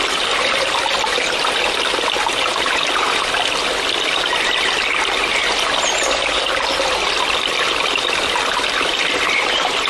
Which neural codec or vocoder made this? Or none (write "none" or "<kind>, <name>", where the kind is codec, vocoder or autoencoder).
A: none